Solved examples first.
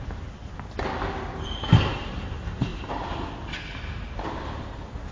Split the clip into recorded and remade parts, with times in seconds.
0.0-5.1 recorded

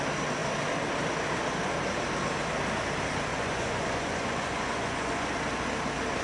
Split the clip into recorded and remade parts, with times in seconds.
0.0-3.3 recorded; 3.3-5.3 remade; 5.3-6.2 recorded

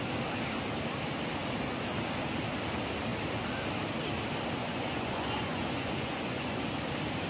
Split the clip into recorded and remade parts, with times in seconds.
0.0-4.6 recorded; 4.6-6.6 remade; 6.6-7.3 recorded

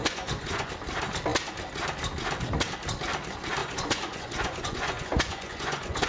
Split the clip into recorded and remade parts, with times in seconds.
0.0-0.7 remade; 0.7-3.6 recorded; 3.6-6.1 remade

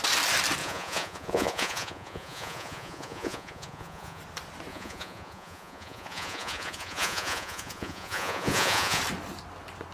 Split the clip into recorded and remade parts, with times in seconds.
0.0-0.6 recorded; 0.6-4.2 remade; 4.2-4.7 recorded; 4.7-9.0 remade; 9.0-9.9 recorded

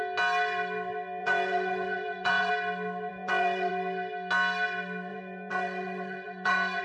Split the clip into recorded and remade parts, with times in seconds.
0.0-1.2 recorded; 1.2-2.5 remade; 2.5-3.1 recorded; 3.1-3.7 remade; 3.7-5.1 recorded; 5.1-6.8 remade